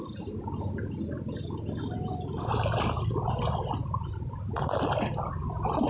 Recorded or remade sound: recorded